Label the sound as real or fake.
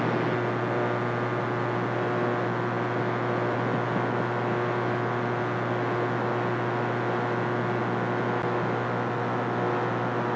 real